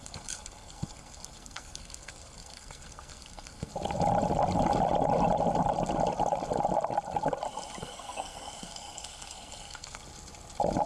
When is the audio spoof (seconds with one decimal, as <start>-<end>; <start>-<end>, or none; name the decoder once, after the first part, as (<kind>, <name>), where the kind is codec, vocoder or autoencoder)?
0.0-3.7 (codec, SNAC); 7.8-10.0